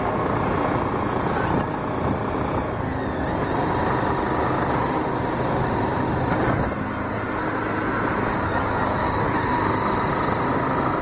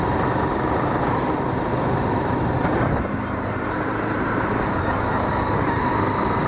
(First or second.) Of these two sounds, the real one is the first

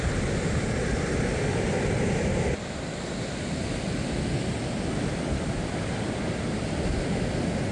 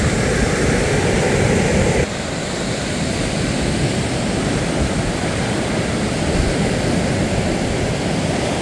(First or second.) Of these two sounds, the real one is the first